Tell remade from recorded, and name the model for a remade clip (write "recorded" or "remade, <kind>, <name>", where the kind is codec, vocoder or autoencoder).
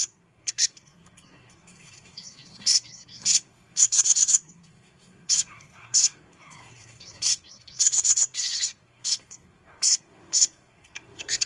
remade, codec, SNAC